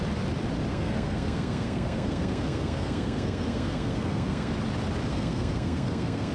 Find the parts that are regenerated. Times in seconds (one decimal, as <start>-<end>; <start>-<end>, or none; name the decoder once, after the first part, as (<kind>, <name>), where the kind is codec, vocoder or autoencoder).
0.7-4.5 (codec, SNAC); 5.1-6.3